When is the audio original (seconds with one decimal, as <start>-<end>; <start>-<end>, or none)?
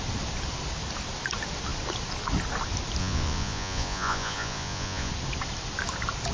0.0-3.0; 5.1-6.3